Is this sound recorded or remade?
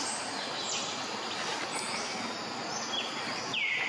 recorded